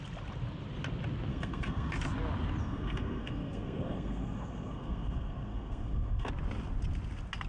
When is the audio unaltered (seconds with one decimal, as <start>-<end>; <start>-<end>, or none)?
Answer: 0.0-1.3; 1.9-2.6; 6.3-7.5